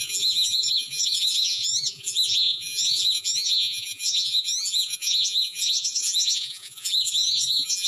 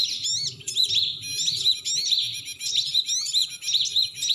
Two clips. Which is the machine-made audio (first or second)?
first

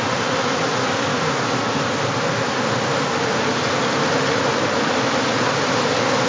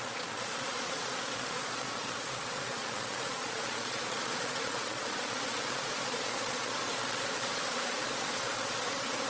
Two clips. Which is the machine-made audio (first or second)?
second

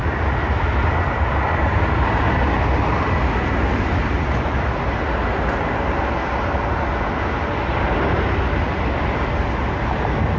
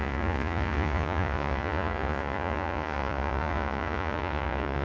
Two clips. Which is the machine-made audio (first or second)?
second